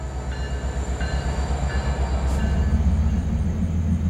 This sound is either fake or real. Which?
real